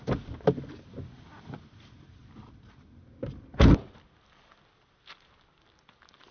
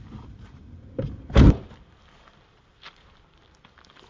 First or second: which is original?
first